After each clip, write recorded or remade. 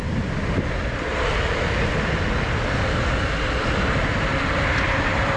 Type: recorded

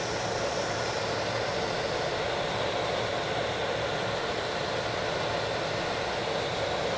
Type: recorded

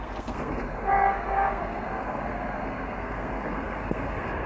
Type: remade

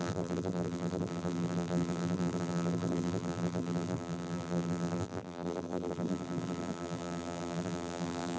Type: remade